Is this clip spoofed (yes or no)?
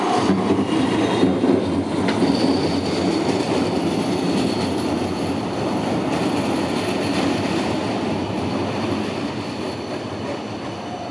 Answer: no